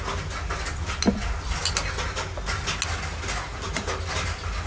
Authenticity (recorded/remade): recorded